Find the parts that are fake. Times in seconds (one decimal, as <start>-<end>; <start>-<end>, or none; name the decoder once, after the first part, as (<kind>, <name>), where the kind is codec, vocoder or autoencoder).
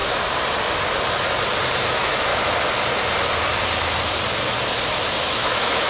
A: 1.9-2.3 (autoencoder, DAC-VAE); 5.2-5.9